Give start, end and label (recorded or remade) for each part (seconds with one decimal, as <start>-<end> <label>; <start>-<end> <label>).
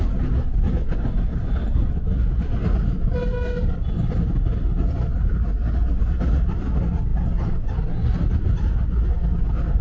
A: 0.0-9.8 recorded